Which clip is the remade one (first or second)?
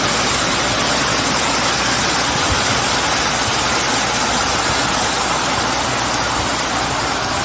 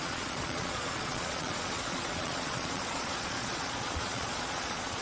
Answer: second